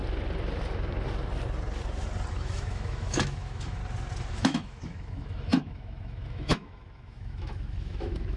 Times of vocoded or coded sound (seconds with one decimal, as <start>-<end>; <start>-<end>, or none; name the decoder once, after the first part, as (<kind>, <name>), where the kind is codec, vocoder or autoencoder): 2.3-3.8 (autoencoder, DAC-VAE); 4.3-8.4